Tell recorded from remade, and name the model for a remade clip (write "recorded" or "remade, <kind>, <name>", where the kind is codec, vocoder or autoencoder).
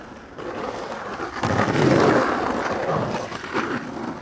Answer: recorded